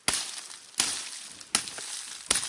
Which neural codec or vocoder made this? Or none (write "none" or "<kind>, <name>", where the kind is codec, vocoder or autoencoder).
none